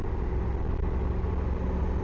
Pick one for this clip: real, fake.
real